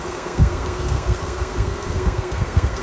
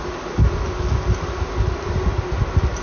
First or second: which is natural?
second